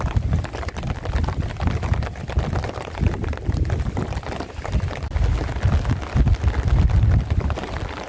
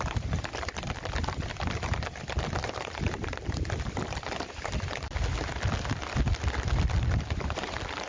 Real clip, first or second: first